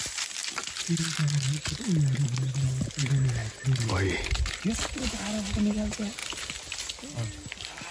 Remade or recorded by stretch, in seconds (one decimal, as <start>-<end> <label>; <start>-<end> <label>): 0.0-7.9 recorded